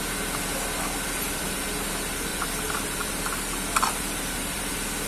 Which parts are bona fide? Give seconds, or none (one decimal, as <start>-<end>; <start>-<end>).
0.0-0.5; 1.9-2.3; 4.6-5.1